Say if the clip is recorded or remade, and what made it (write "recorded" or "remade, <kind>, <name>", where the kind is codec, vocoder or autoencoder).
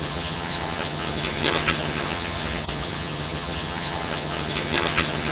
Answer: remade, vocoder, HiFi-GAN